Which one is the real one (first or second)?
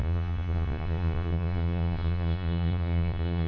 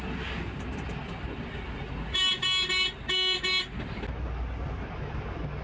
second